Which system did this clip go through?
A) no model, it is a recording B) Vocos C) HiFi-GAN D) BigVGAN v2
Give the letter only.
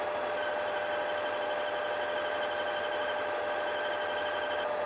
A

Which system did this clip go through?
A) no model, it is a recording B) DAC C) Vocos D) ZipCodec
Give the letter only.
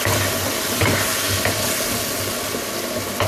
A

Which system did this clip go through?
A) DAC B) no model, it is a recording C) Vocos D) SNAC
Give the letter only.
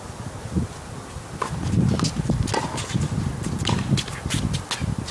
B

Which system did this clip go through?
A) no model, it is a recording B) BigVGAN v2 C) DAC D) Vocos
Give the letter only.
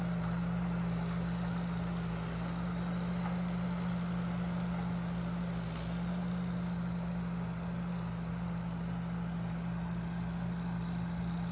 A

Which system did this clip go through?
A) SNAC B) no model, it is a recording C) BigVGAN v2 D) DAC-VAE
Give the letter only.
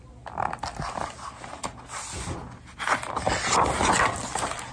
B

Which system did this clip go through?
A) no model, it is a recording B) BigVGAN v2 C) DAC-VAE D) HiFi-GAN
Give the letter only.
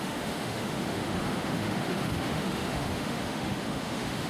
C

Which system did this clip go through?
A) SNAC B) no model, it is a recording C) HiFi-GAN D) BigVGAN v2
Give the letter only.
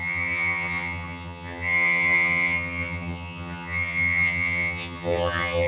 C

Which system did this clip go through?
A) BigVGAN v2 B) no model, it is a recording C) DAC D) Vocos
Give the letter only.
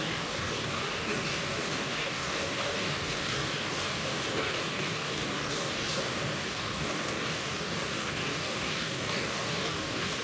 C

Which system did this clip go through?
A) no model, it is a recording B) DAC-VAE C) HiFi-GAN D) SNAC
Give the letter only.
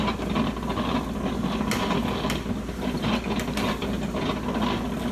A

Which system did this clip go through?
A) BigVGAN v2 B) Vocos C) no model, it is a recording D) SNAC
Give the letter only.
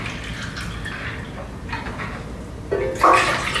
C